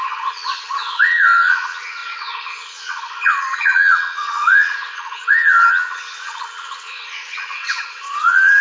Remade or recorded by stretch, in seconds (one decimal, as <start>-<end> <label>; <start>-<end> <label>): 0.0-8.6 remade